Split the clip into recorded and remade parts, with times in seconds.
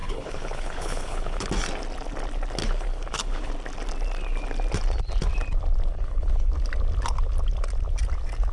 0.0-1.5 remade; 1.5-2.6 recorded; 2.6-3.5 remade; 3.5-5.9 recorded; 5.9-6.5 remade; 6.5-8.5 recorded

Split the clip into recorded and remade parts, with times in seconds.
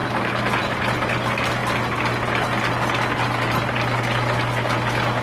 0.0-5.2 recorded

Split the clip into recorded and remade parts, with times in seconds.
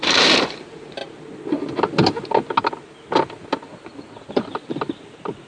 0.0-1.0 remade; 1.0-4.3 recorded; 4.3-5.5 remade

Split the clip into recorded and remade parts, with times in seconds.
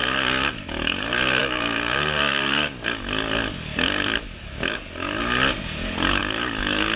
0.0-7.0 remade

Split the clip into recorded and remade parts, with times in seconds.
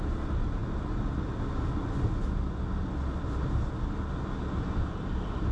0.0-5.5 recorded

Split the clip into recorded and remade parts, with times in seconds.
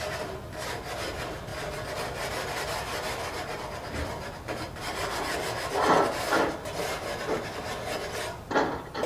0.0-9.1 recorded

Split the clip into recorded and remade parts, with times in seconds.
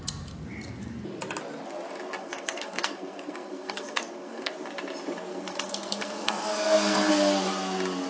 0.0-2.2 recorded; 2.2-4.5 remade; 4.5-5.3 recorded; 5.3-7.1 remade; 7.1-8.1 recorded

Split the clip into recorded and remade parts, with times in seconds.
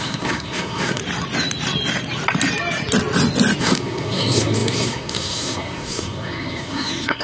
0.0-1.0 remade; 1.0-3.6 recorded; 3.6-7.2 remade